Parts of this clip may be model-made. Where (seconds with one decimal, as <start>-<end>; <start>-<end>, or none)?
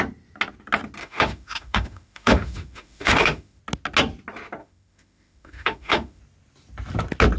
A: 1.0-3.6; 4.6-6.2